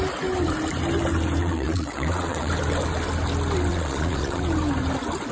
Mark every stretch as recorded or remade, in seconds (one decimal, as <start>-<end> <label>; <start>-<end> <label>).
0.0-1.4 recorded; 1.4-2.5 remade; 2.5-3.7 recorded; 3.7-4.4 remade; 4.4-5.3 recorded